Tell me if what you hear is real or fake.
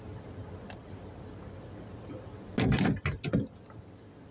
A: real